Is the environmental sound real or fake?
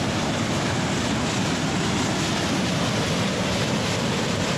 real